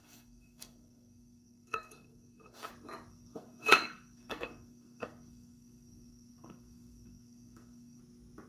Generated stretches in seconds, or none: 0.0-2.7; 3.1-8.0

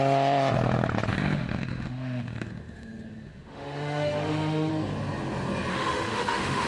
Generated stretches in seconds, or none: 1.1-4.7; 5.7-6.7

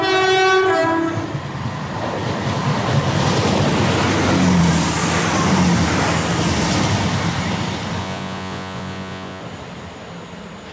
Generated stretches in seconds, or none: 8.0-9.4

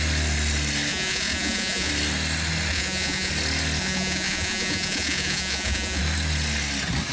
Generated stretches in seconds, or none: 0.9-1.9; 2.7-3.3; 3.8-6.0

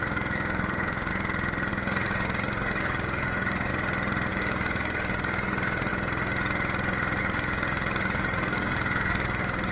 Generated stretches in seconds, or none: 0.0-1.1; 1.7-3.7; 4.3-5.9; 7.2-9.7

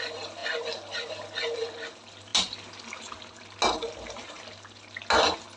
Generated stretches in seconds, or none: none

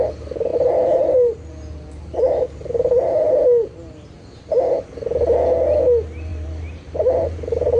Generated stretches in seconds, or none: 0.5-4.5; 6.3-7.8